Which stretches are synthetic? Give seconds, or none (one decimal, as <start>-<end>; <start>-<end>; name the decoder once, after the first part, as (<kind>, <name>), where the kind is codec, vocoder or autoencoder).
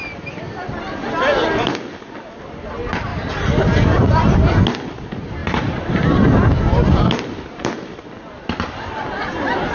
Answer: none